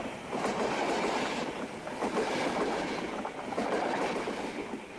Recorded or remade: recorded